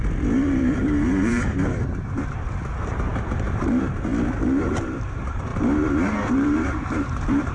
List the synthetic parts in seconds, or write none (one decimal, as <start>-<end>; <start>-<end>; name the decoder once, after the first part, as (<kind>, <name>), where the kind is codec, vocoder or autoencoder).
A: 0.0-4.1 (vocoder, BigVGAN v2); 4.6-5.5; 6.3-7.5